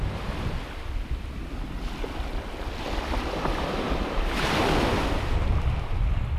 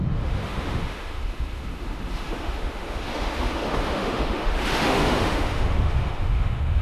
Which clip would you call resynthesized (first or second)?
second